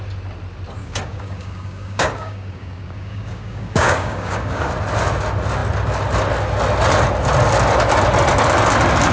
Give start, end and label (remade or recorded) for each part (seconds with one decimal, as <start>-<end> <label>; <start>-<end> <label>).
0.0-0.8 recorded; 0.8-4.7 remade; 4.7-9.1 recorded